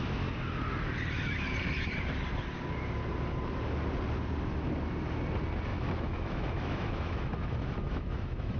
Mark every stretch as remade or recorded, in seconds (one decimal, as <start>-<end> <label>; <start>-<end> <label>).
0.0-5.7 recorded; 5.7-8.6 remade